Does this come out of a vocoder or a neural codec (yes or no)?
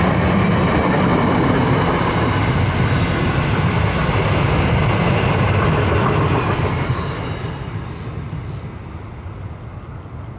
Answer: no